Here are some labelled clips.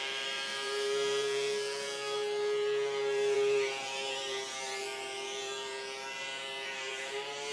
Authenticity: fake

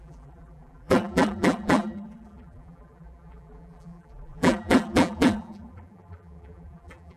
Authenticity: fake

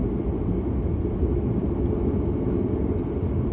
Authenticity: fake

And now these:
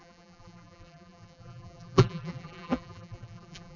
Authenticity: fake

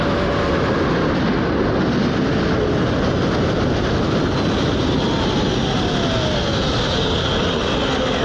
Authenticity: real